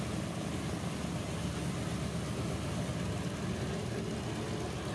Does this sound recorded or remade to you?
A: recorded